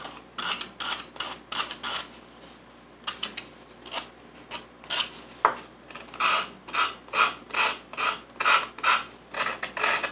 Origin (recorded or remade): recorded